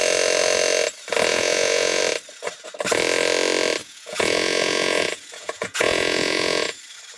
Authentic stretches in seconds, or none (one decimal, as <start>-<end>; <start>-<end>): 0.0-1.3; 2.0-3.8; 6.8-7.2